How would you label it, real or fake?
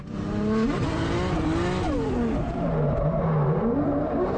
real